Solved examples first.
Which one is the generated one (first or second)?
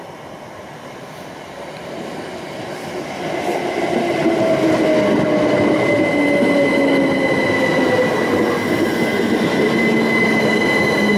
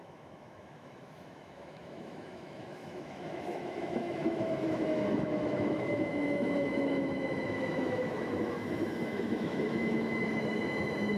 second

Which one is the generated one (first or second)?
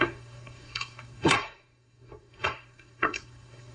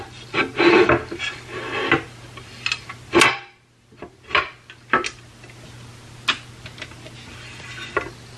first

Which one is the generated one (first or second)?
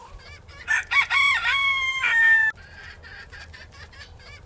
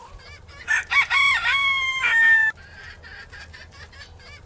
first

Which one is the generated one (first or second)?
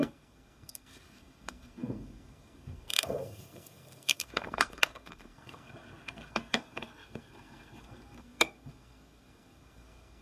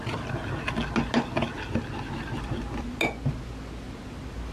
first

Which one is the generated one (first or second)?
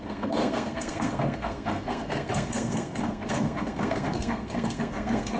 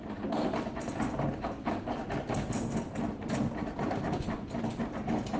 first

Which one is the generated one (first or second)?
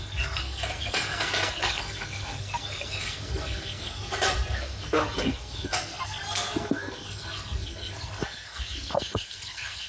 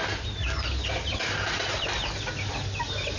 first